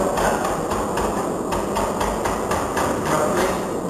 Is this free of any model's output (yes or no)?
yes